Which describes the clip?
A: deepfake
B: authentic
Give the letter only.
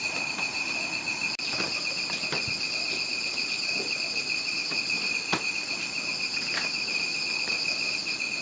A